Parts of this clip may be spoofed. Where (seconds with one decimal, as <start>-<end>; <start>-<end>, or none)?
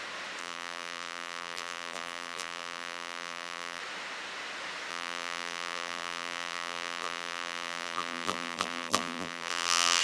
0.4-3.8; 4.9-10.0